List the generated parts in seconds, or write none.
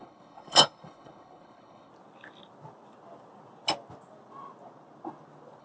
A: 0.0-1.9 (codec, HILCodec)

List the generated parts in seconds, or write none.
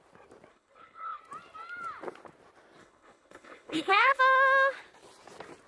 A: 0.5-1.2 (codec, HILCodec); 2.8-4.2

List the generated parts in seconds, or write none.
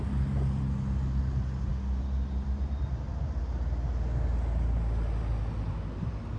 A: none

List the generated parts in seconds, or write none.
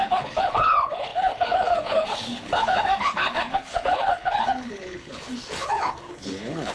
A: 0.0-6.7 (codec, HILCodec)